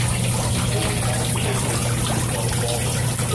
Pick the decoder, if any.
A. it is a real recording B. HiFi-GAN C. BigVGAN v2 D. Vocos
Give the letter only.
A